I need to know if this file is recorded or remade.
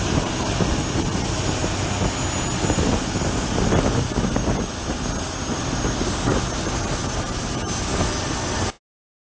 recorded